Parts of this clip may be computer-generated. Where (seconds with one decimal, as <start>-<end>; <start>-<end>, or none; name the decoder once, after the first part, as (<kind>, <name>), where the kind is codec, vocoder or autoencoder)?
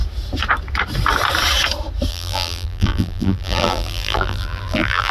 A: 2.1-5.1 (vocoder, BigVGAN v2)